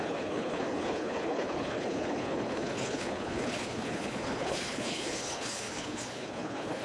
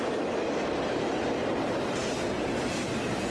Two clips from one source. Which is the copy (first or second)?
first